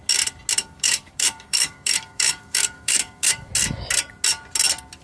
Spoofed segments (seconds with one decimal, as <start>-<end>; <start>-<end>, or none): 0.6-3.5